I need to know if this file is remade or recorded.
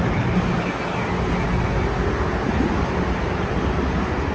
recorded